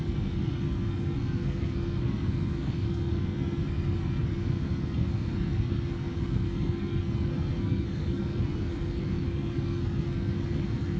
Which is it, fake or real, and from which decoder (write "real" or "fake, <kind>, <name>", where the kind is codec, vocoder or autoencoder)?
fake, codec, SNAC